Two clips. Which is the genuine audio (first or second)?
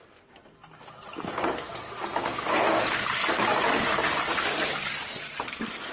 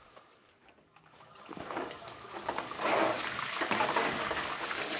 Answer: first